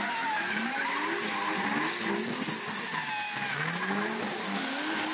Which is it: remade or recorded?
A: recorded